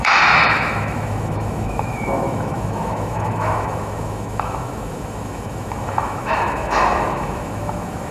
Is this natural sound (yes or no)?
no